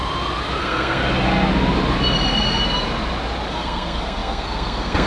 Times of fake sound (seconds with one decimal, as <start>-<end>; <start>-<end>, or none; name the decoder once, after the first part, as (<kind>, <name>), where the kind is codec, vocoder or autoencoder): 0.6-1.0 (codec, SNAC); 3.5-5.1